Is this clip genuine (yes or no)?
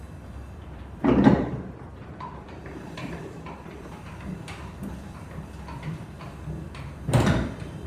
no